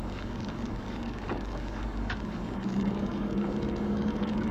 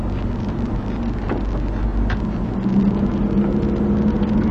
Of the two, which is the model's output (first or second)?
first